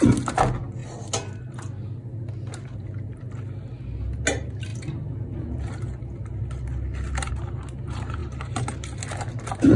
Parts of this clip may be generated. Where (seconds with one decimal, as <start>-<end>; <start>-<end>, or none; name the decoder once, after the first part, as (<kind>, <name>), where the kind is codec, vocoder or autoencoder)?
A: none